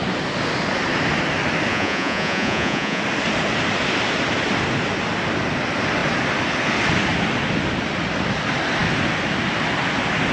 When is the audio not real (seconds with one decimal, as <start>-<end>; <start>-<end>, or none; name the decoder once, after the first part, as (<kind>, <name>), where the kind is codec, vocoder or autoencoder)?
1.7-3.0 (vocoder, Vocos)